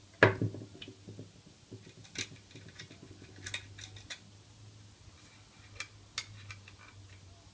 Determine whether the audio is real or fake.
real